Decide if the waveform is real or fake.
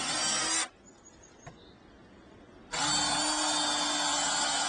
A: real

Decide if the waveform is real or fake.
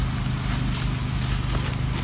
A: real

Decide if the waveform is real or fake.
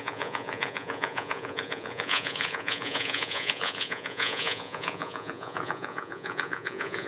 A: fake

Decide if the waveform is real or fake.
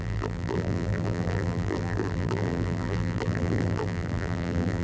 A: fake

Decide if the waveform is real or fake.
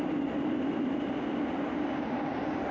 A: real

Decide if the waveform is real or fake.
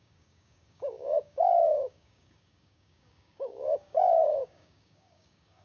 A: fake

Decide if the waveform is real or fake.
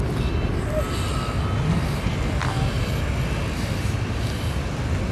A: real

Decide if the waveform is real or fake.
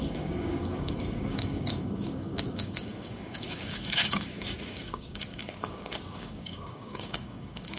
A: fake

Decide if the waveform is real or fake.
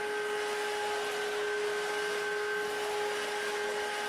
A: real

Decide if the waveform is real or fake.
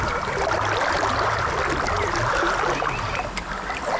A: real